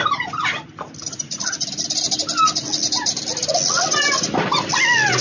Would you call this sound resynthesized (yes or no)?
no